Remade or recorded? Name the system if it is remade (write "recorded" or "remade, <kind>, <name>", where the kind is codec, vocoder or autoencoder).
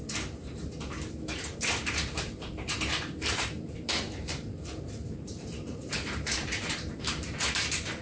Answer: remade, vocoder, BigVGAN v2